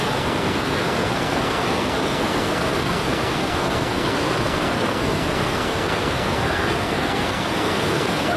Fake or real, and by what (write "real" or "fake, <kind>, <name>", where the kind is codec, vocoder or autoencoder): fake, codec, SNAC